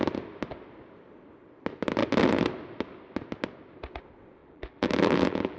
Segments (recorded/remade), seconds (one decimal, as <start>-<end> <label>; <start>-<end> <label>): 0.0-4.4 recorded; 4.4-5.6 remade